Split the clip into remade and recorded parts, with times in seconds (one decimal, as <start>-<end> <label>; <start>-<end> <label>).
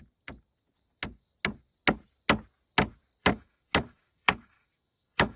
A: 0.0-3.2 recorded; 3.2-5.4 remade